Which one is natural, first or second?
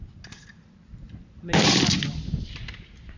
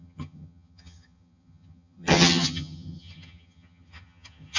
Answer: first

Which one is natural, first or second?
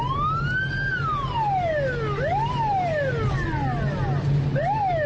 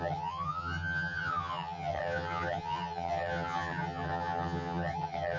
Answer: first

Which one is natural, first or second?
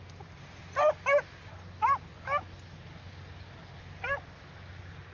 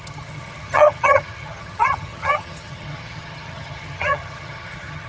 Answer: first